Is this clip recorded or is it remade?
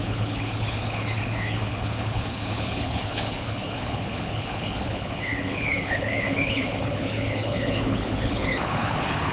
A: remade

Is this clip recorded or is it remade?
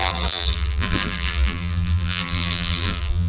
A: remade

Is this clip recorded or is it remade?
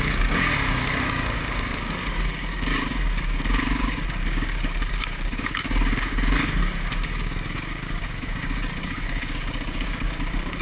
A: remade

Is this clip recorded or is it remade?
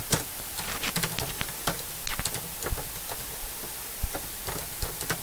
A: recorded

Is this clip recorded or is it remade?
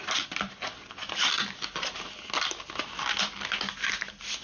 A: recorded